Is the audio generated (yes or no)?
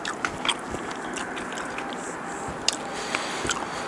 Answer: no